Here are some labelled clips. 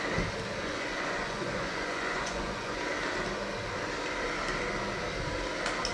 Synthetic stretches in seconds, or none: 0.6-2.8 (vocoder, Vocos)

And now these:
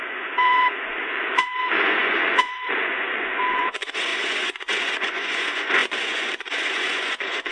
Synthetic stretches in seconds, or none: 0.0-7.5 (vocoder, Vocos)

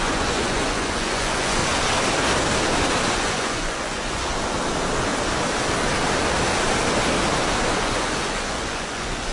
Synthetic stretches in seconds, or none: 0.0-1.6 (vocoder, Vocos); 3.1-4.3; 7.7-9.3

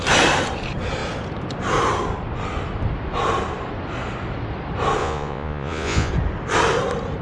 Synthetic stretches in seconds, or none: 5.0-6.1 (vocoder, Vocos)

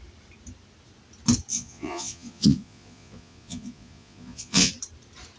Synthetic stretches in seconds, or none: 1.5-4.7 (vocoder, Vocos)

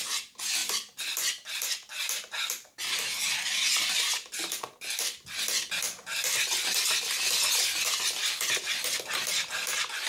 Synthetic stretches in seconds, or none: none